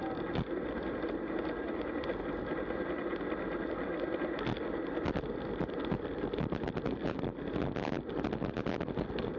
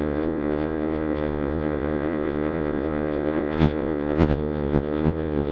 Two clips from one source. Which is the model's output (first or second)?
second